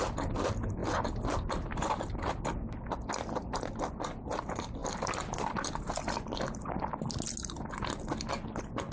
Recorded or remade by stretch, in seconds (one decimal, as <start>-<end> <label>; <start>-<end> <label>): 0.0-8.9 recorded